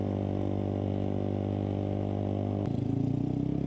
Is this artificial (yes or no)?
no